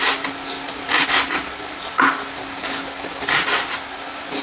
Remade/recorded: recorded